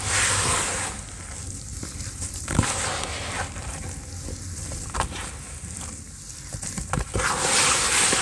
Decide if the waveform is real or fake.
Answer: real